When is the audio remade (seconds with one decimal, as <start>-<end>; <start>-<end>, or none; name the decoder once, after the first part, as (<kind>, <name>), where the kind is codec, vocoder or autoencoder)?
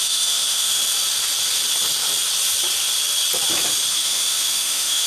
0.0-0.8 (autoencoder, DAC-VAE); 3.9-5.1